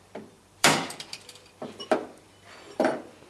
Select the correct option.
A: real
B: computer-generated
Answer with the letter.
B